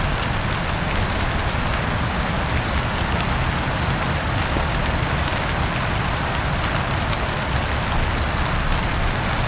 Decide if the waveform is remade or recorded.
recorded